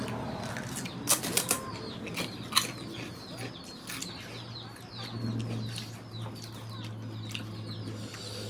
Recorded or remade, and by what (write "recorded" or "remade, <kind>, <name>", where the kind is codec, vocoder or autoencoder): recorded